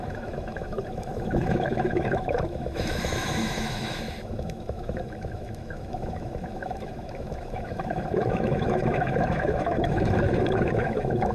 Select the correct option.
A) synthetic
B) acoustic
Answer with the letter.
A